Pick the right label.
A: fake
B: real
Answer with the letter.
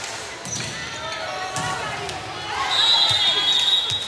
B